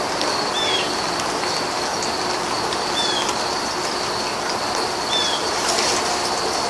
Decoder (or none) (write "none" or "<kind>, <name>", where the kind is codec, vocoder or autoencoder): none